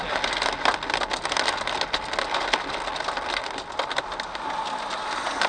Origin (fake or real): real